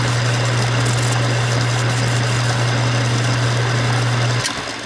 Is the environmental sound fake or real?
real